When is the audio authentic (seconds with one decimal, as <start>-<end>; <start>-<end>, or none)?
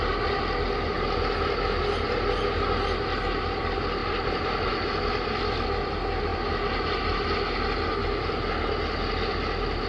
0.0-4.0; 5.4-9.9